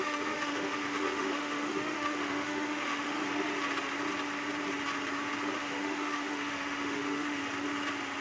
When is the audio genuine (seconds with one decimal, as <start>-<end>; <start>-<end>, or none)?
3.2-5.6; 7.4-8.2